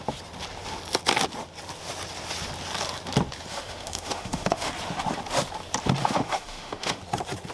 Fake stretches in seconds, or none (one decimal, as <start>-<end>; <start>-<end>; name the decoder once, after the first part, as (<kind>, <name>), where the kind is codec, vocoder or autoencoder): 3.5-4.7 (autoencoder, DAC-VAE); 6.0-7.0